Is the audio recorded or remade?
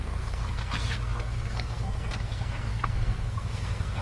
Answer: remade